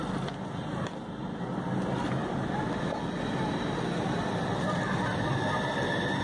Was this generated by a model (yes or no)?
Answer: yes